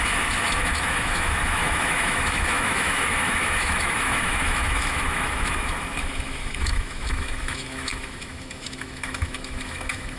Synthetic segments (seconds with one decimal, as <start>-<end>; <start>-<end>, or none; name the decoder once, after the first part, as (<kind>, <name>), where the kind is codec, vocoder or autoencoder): 0.0-10.2 (autoencoder, DAC-VAE)